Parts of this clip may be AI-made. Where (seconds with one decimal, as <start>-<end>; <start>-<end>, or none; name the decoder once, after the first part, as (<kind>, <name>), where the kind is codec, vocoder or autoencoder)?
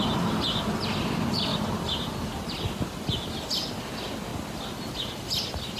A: none